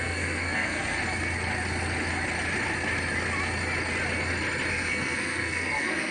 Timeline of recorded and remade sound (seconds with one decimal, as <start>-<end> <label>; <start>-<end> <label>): 0.0-1.0 remade; 1.0-4.7 recorded; 4.7-6.1 remade